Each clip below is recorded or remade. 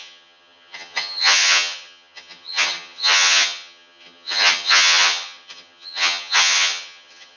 remade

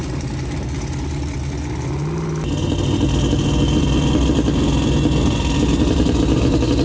recorded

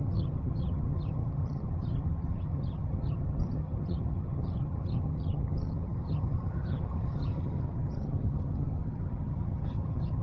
remade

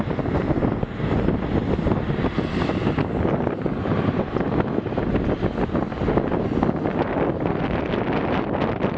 recorded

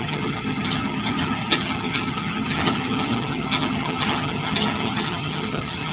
remade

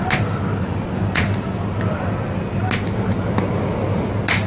recorded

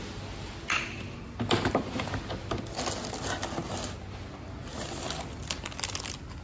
recorded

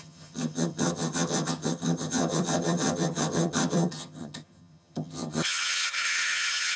remade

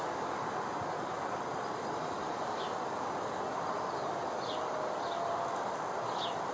recorded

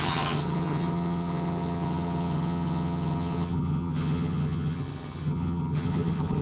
remade